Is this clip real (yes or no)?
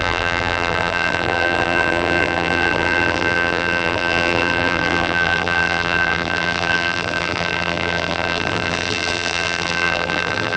no